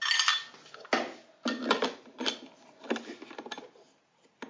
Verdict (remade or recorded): recorded